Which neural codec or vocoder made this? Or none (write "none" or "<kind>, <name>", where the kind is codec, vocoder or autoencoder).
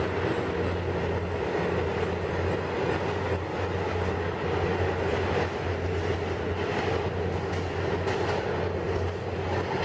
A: none